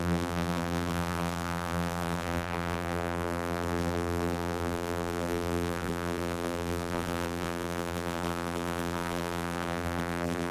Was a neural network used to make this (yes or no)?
yes